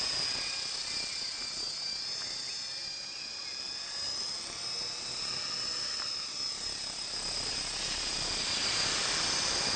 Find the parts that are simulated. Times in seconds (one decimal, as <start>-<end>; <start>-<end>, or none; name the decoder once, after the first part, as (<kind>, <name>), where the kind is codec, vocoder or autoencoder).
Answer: none